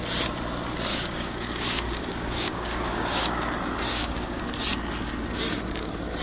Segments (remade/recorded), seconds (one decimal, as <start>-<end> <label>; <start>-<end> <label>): 0.0-0.9 recorded; 0.9-3.5 remade; 3.5-3.9 recorded; 3.9-4.4 remade; 4.4-6.2 recorded